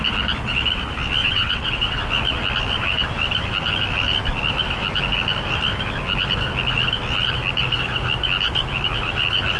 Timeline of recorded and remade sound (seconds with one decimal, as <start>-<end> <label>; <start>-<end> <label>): 0.0-1.2 recorded; 1.2-2.0 remade; 2.0-9.6 recorded